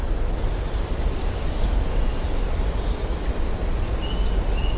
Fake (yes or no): no